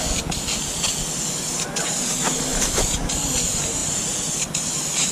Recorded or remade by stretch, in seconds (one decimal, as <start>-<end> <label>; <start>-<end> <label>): 0.0-5.1 recorded